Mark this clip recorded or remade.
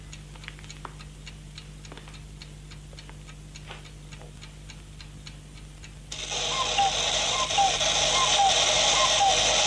recorded